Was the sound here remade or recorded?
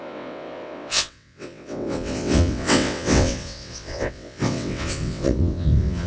remade